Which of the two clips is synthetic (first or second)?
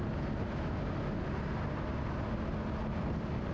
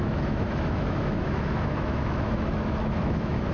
second